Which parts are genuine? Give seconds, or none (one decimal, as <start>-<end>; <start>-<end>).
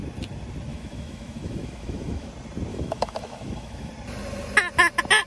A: 0.0-0.7; 2.3-2.7; 3.9-5.3